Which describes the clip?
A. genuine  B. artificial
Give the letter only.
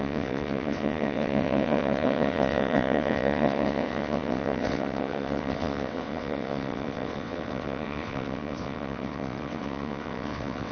B